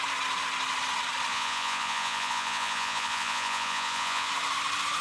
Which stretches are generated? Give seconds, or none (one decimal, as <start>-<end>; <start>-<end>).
1.3-4.3